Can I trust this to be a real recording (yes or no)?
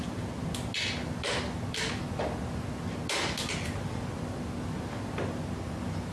yes